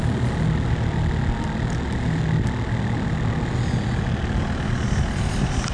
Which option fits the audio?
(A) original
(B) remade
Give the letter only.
A